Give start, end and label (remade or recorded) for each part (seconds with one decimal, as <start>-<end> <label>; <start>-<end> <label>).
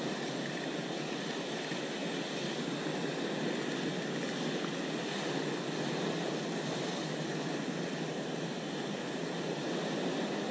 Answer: 0.0-10.5 recorded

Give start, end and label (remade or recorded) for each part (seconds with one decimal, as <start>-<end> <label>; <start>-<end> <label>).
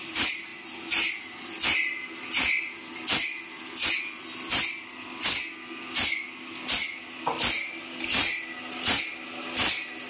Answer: 0.0-10.1 recorded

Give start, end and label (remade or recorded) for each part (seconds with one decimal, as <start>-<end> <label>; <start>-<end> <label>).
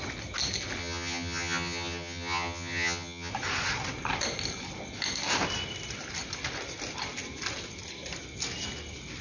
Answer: 0.0-0.8 recorded; 0.8-3.3 remade; 3.3-9.2 recorded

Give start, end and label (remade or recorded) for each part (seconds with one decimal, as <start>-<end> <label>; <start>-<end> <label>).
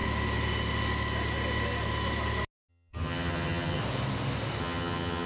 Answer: 0.0-2.7 recorded; 2.7-3.8 remade; 3.8-4.6 recorded; 4.6-5.3 remade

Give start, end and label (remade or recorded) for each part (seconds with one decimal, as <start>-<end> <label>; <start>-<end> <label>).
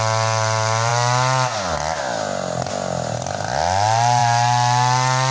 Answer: 0.0-5.3 recorded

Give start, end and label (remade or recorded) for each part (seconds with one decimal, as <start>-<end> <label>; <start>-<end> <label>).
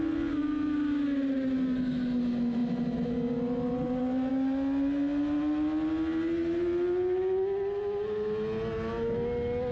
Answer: 0.0-9.7 recorded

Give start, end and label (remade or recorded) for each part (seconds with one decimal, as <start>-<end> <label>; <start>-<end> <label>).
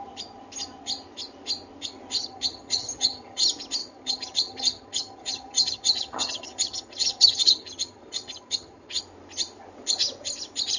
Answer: 0.0-2.2 recorded; 2.2-3.4 remade; 3.4-3.8 recorded; 3.8-9.0 remade; 9.0-10.8 recorded